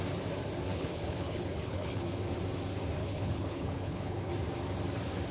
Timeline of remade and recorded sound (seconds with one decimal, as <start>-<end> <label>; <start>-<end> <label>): 0.0-0.7 recorded; 0.7-2.1 remade; 2.1-3.0 recorded; 3.0-4.3 remade; 4.3-5.3 recorded